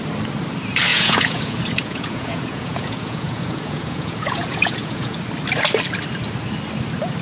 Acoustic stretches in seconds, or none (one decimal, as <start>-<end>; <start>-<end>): 0.0-0.9; 5.2-7.2